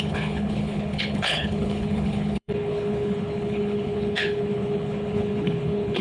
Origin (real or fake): fake